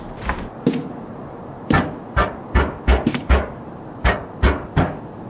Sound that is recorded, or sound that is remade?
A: recorded